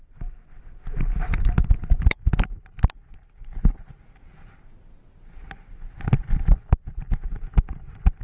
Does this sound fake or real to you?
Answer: real